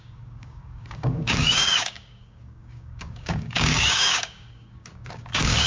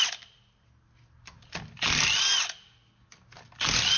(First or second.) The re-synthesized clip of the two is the first